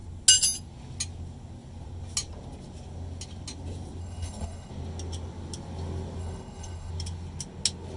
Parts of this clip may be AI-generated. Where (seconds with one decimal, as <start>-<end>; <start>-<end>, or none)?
4.0-4.7; 6.2-6.9